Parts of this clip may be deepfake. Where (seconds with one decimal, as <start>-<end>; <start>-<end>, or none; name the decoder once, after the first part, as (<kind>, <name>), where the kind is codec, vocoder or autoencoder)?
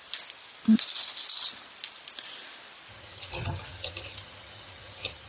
2.9-5.3 (vocoder, HiFi-GAN)